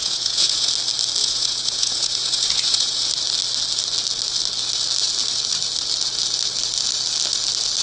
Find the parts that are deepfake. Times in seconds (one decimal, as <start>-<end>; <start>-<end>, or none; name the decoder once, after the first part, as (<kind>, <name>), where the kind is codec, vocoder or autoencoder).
0.0-0.7 (vocoder, Vocos); 1.2-3.1